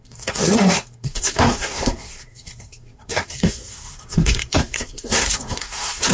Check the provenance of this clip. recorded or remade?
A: remade